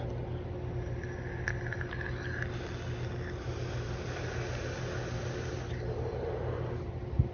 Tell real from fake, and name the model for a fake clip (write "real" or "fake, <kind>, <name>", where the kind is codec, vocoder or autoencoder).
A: real